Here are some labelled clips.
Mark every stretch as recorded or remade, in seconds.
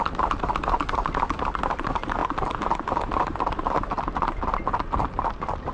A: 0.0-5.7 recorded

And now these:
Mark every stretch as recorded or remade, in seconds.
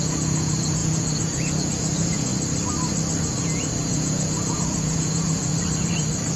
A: 0.0-2.3 remade; 2.3-3.4 recorded; 3.4-5.5 remade; 5.5-6.4 recorded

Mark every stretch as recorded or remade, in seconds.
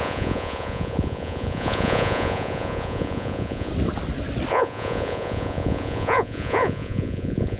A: 0.0-3.7 remade; 3.7-4.5 recorded; 4.5-7.6 remade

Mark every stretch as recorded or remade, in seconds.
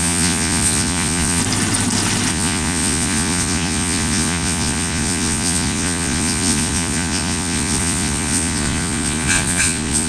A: 0.0-1.4 remade; 1.4-2.3 recorded; 2.3-10.1 remade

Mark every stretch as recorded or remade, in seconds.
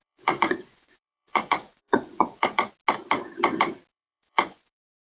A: 0.0-2.7 remade; 2.7-3.9 recorded; 3.9-5.1 remade